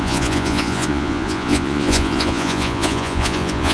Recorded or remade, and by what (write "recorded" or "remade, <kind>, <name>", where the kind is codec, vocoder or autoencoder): remade, vocoder, Vocos